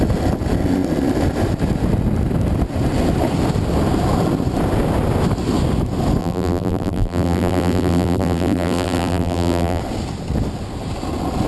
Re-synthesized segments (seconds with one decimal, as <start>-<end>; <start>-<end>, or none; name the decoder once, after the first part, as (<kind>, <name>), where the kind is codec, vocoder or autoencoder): 6.2-9.8 (vocoder, BigVGAN v2)